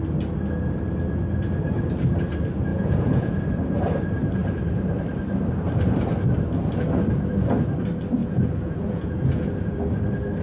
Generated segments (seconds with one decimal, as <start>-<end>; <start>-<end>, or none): 2.7-3.4; 8.2-9.5